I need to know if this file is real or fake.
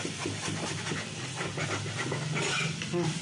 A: real